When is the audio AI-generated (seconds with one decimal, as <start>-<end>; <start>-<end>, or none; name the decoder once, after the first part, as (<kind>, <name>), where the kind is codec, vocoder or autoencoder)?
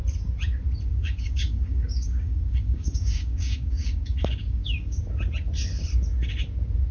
0.9-5.0 (codec, DAC)